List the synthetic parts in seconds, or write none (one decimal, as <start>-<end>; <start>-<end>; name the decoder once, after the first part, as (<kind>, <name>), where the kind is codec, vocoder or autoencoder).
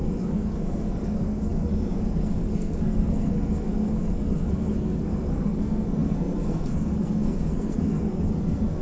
0.0-8.8 (codec, SNAC)